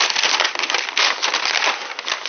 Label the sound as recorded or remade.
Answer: recorded